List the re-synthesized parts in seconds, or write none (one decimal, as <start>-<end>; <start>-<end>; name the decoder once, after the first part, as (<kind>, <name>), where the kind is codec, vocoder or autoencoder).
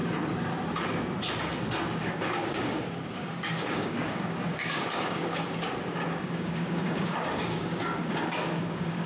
2.0-9.1 (codec, DAC)